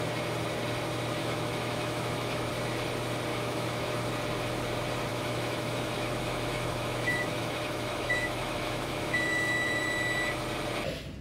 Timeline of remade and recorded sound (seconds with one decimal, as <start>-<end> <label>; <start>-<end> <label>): 0.0-1.2 recorded; 1.2-2.5 remade; 2.5-3.3 recorded; 3.3-3.9 remade; 3.9-5.1 recorded; 5.1-9.8 remade; 9.8-11.2 recorded